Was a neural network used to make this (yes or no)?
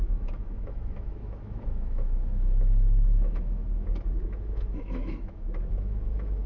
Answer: yes